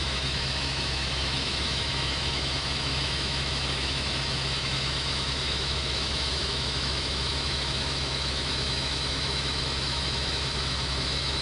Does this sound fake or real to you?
fake